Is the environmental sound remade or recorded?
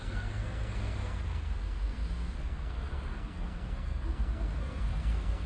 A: remade